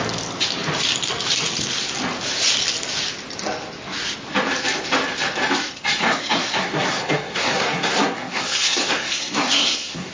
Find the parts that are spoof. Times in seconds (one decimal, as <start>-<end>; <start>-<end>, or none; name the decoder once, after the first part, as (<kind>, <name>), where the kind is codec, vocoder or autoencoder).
6.0-10.1 (codec, SNAC)